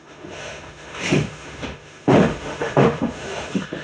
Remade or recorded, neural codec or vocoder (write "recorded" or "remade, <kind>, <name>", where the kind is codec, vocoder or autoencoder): remade, autoencoder, DAC-VAE